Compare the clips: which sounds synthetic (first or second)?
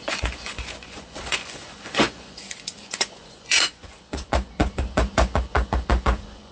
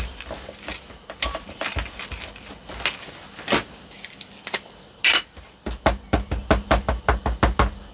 first